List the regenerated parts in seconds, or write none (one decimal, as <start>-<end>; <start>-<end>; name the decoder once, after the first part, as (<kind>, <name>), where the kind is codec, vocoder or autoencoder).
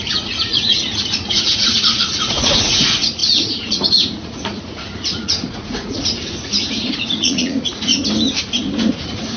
0.0-7.9 (vocoder, Vocos); 8.8-9.4